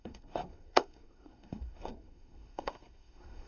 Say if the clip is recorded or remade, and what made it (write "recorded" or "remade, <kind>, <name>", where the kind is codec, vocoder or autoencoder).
remade, codec, SNAC